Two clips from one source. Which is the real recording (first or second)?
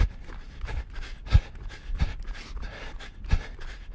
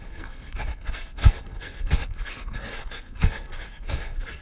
first